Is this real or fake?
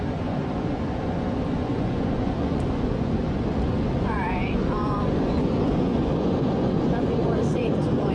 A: fake